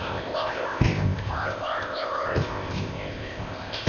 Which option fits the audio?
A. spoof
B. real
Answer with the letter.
A